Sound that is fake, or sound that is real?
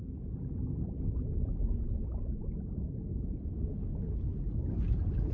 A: real